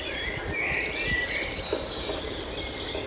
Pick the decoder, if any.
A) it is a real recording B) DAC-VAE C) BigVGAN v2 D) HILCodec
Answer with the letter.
A